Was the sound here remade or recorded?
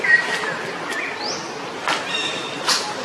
recorded